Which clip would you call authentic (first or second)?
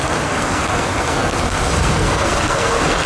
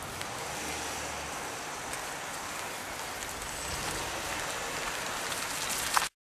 second